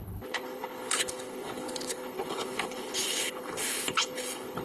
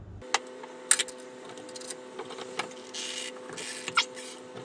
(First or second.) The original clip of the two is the second